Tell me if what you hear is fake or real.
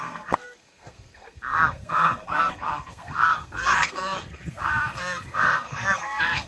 fake